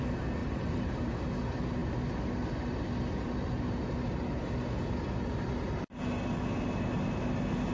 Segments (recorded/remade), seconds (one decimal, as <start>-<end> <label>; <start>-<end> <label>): 0.0-0.4 recorded; 0.4-1.1 remade; 1.1-7.7 recorded